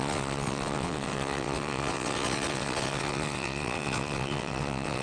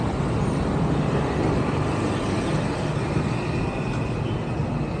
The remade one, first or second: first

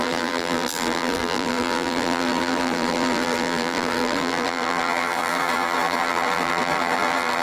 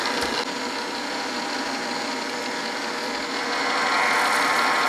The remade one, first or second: first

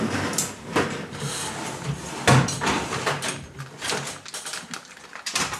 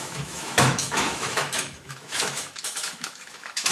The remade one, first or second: second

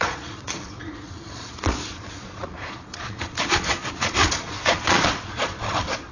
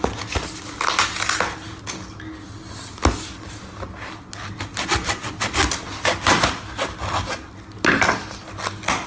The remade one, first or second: first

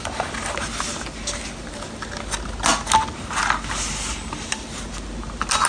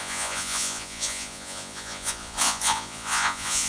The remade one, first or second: second